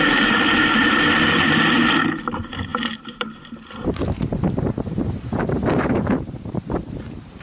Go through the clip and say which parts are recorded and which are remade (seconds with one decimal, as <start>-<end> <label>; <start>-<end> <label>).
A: 0.0-7.4 remade